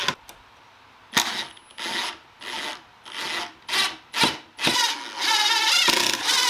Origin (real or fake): real